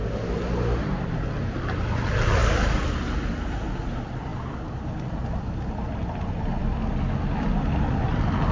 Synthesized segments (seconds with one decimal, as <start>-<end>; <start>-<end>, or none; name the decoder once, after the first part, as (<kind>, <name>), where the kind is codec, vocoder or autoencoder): none